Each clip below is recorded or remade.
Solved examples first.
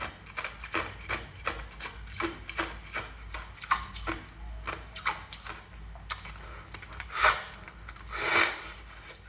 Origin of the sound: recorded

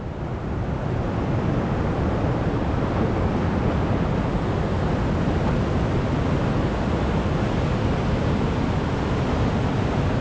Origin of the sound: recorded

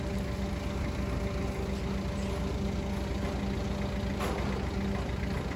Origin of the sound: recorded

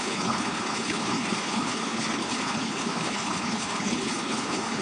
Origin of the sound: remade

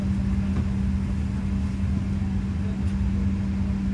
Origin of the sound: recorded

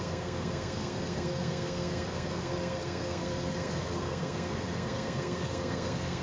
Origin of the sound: remade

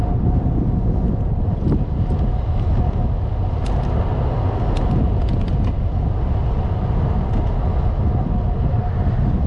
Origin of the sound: recorded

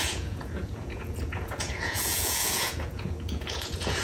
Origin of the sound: remade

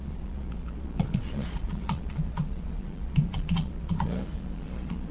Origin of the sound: remade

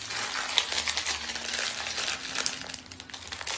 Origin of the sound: recorded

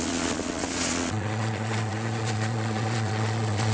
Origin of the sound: remade